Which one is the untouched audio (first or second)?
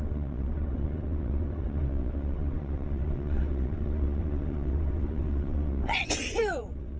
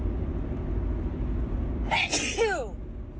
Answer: second